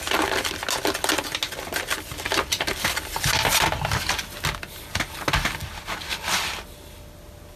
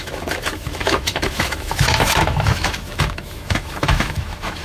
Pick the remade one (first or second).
second